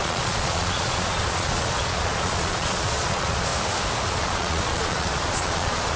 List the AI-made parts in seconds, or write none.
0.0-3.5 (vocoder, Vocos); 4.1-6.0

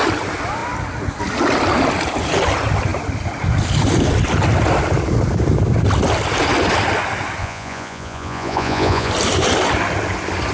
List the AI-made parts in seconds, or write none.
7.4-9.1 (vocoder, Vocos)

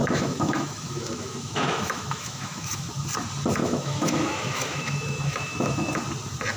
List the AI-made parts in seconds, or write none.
0.0-3.0 (autoencoder, DAC-VAE); 3.6-5.9

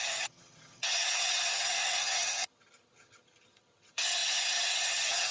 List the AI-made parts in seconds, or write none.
0.0-5.3 (vocoder, HiFi-GAN)

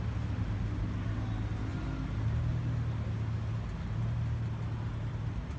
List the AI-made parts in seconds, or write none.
none